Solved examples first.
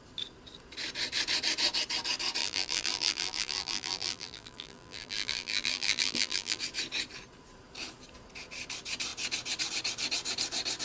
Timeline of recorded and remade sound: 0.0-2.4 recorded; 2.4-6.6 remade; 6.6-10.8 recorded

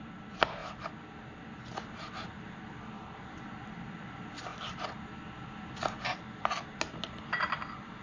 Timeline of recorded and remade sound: 0.0-8.0 recorded

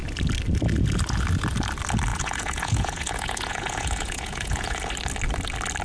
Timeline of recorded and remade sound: 0.0-2.1 recorded; 2.1-4.9 remade; 4.9-5.8 recorded

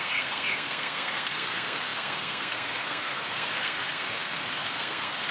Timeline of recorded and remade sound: 0.0-5.3 remade

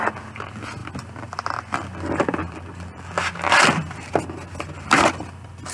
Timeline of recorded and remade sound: 0.0-5.7 recorded

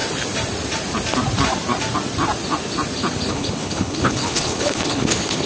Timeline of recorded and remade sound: 0.0-3.3 recorded; 3.3-5.5 remade

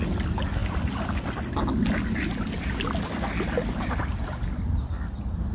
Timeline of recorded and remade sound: 0.0-5.5 recorded

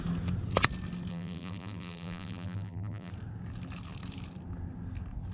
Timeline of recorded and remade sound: 0.0-1.1 recorded; 1.1-3.1 remade; 3.1-5.3 recorded